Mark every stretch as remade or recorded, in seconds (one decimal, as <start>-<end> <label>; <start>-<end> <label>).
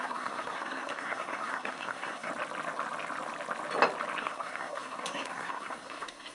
0.0-2.3 remade; 2.3-4.2 recorded; 4.2-6.3 remade